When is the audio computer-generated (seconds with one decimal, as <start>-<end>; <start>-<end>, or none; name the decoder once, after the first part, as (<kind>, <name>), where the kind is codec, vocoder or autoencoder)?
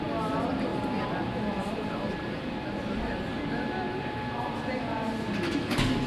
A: 0.7-2.4 (vocoder, BigVGAN v2)